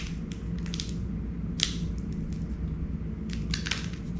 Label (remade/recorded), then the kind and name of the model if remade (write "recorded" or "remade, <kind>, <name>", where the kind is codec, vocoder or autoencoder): recorded